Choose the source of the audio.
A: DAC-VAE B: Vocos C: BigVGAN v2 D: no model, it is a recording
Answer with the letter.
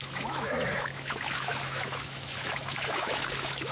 A